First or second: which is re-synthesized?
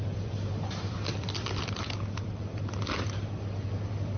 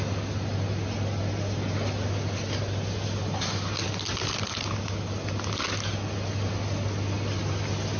first